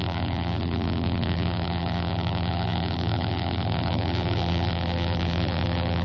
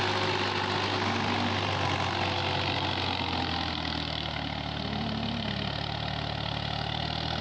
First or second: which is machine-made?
first